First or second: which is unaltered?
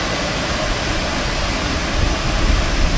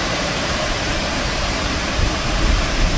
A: first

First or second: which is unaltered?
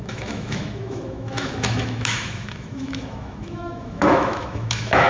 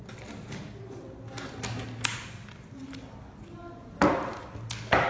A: second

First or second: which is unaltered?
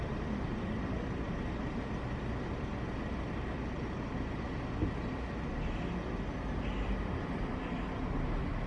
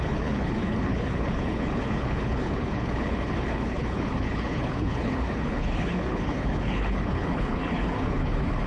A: first